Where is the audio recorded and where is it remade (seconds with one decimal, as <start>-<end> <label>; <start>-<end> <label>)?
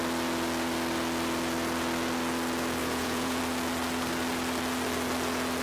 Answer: 0.0-2.8 recorded; 2.8-3.4 remade; 3.4-5.6 recorded